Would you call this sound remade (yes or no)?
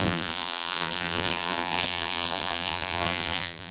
yes